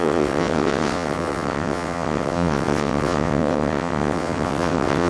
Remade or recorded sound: remade